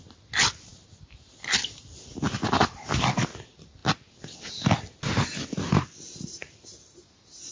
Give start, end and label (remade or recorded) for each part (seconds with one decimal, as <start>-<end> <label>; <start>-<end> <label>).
0.0-7.5 recorded